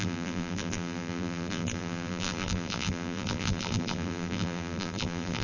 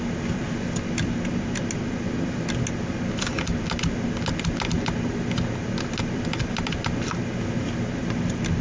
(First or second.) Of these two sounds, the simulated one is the first